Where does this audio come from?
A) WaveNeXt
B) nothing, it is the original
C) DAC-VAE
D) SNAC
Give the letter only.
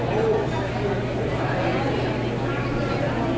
B